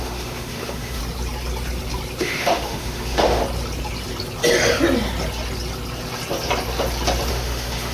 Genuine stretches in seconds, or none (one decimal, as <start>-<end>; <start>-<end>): 1.0-2.2; 3.4-7.3

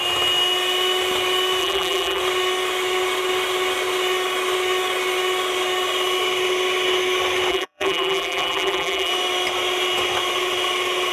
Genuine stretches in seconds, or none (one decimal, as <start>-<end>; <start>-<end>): 0.0-1.6; 2.2-7.5; 9.1-11.1

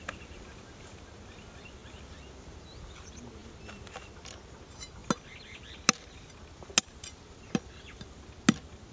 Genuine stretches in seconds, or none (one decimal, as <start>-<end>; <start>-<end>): 0.0-8.9

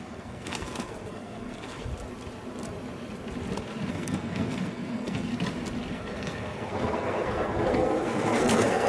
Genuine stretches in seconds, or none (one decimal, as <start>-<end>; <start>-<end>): 1.9-3.9; 5.3-5.9

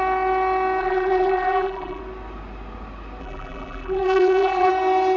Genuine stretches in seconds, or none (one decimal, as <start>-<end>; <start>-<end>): 0.0-0.8; 2.0-3.2; 4.7-5.2

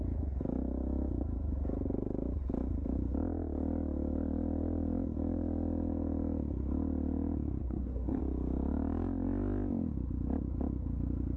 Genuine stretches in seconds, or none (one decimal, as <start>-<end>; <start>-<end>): 0.0-7.6; 8.2-11.4

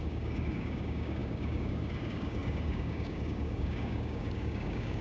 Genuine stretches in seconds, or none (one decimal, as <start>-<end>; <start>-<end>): none